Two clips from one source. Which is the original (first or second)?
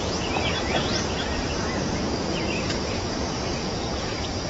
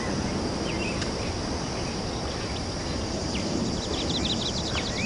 second